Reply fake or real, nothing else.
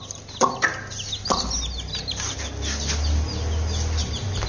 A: real